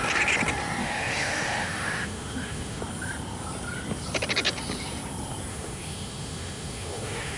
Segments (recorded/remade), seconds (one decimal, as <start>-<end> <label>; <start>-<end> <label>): 0.0-0.8 recorded; 0.8-2.8 remade; 2.8-5.5 recorded; 5.5-7.4 remade